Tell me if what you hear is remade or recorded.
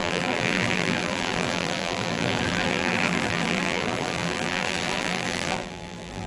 remade